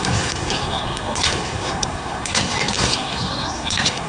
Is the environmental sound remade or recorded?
remade